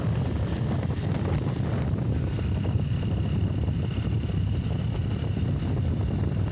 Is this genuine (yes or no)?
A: no